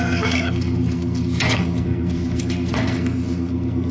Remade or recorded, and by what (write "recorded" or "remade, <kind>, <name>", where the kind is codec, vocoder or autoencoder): remade, codec, SNAC